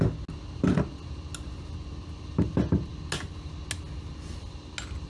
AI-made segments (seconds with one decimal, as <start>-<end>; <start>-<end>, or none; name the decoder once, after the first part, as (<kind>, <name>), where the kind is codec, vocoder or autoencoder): none

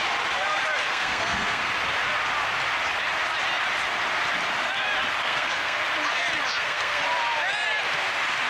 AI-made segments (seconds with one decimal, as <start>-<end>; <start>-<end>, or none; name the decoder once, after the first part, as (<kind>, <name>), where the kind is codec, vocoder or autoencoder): 0.8-1.7 (codec, SNAC); 5.2-5.8; 6.5-7.0

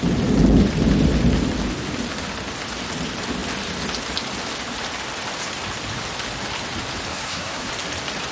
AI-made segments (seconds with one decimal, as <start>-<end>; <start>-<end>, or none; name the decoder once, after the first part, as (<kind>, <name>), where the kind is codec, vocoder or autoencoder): 7.1-7.7 (codec, SNAC)

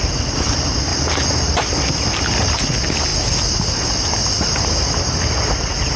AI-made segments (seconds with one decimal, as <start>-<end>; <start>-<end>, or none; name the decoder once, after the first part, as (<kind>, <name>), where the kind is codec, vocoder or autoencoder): none

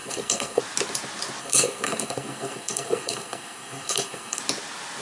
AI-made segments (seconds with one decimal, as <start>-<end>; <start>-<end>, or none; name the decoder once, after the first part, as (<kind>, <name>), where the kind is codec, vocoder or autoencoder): 0.0-0.6 (codec, SNAC); 1.4-4.4

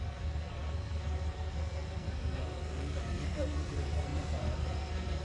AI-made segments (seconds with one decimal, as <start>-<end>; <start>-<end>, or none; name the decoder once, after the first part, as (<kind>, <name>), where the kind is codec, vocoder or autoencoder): 0.0-5.2 (codec, SNAC)

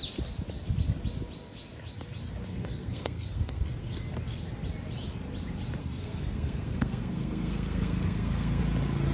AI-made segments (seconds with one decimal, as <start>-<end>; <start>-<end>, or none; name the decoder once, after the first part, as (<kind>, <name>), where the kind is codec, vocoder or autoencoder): 2.5-4.0 (codec, SNAC); 5.8-8.6

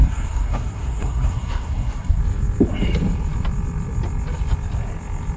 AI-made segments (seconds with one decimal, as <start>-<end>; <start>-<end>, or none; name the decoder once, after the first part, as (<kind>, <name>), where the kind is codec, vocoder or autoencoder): 0.0-2.2 (codec, SNAC)